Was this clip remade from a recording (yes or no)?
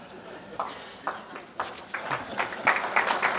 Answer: no